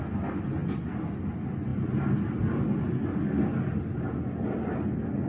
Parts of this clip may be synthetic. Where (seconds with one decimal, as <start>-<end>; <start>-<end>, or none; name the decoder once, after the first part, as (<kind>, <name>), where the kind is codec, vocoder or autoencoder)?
none